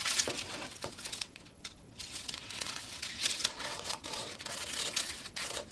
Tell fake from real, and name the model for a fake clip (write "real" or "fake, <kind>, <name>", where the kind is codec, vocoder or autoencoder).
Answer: fake, vocoder, WaveNeXt